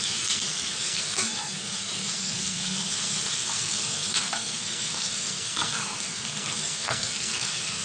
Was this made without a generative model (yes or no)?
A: no